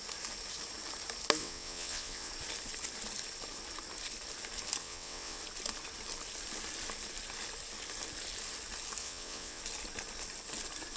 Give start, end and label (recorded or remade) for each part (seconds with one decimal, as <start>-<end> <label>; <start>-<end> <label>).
0.0-1.4 recorded; 1.4-2.3 remade; 2.3-4.8 recorded; 4.8-5.4 remade; 5.4-9.0 recorded; 9.0-9.6 remade; 9.6-11.0 recorded